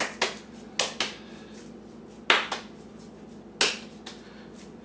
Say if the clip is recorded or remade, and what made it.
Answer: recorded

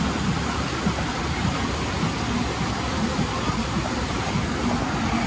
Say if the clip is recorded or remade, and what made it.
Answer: recorded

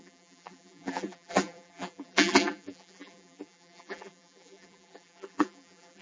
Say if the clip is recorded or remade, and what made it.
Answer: remade, vocoder, BigVGAN v2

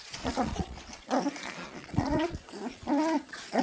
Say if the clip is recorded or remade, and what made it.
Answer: remade, vocoder, Vocos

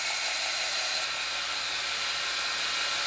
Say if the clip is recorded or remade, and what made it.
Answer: recorded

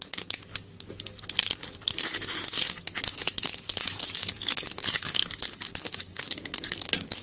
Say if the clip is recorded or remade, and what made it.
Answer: remade, codec, DAC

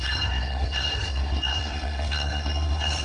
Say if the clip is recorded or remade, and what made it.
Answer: remade, codec, SNAC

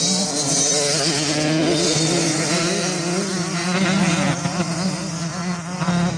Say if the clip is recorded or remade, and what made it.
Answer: recorded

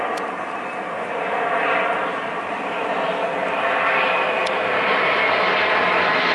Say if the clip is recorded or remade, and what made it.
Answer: remade, vocoder, BigVGAN v2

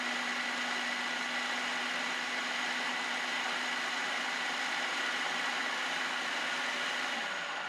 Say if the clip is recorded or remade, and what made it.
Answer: recorded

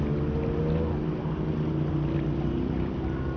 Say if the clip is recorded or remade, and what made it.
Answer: recorded